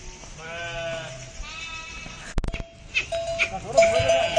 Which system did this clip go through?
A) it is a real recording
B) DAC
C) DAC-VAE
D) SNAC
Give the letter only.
A